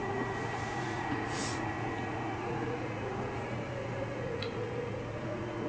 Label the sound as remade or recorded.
remade